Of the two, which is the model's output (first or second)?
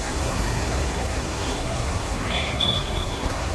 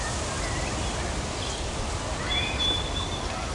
first